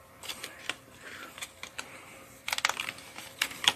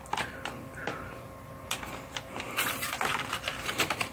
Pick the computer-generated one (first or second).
first